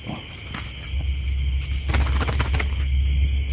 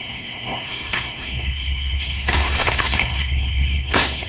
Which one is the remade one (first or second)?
second